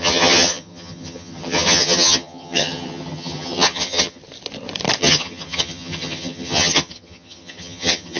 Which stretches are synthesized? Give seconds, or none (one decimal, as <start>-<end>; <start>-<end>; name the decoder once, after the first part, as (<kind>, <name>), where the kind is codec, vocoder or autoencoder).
0.0-4.2 (vocoder, HiFi-GAN); 5.0-8.2